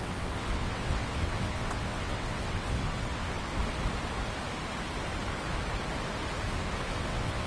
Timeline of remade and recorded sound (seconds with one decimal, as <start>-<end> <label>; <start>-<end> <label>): 0.0-3.5 remade; 3.5-6.8 recorded; 6.8-7.5 remade